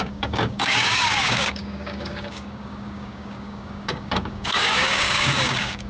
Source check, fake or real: fake